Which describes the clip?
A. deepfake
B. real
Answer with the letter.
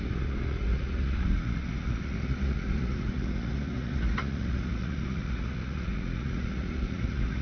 A